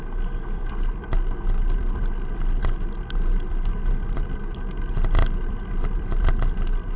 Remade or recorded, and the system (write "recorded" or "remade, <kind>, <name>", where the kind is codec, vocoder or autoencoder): recorded